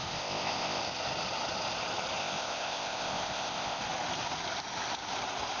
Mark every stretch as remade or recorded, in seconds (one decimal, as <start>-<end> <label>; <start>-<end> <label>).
0.0-0.8 remade; 0.8-2.2 recorded; 2.2-3.8 remade; 3.8-5.6 recorded